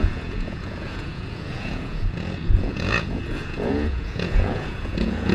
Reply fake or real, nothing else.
fake